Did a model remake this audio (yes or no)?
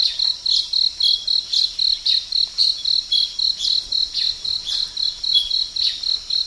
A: no